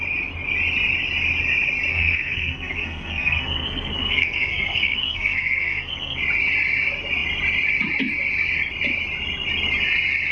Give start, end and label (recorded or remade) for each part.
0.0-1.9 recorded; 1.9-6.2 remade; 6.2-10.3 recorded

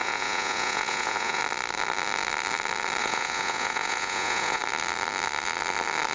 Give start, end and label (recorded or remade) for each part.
0.0-1.4 remade; 1.4-3.0 recorded; 3.0-4.6 remade; 4.6-6.1 recorded